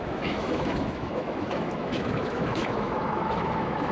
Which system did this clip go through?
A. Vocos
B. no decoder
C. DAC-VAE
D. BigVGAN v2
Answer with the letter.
C